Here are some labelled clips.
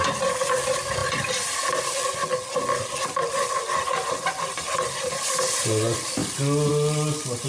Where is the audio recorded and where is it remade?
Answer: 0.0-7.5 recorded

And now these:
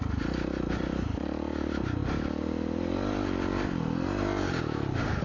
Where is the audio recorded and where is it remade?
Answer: 0.0-5.2 recorded

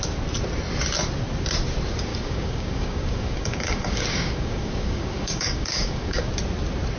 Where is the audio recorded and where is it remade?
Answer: 0.0-2.1 recorded; 2.1-6.3 remade; 6.3-7.0 recorded